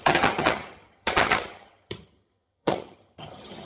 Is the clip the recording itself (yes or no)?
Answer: no